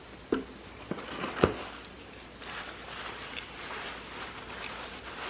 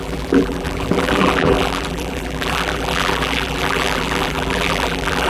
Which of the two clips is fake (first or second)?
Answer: second